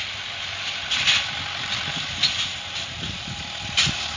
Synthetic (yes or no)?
yes